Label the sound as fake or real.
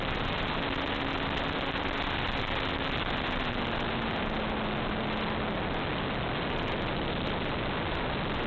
real